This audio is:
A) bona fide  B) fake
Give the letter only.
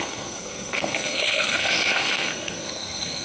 B